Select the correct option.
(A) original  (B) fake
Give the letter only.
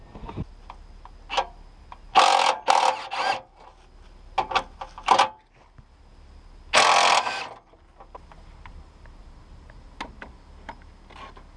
A